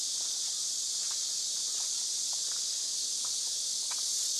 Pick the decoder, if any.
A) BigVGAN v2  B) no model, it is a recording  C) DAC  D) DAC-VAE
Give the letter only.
B